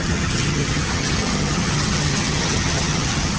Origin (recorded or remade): remade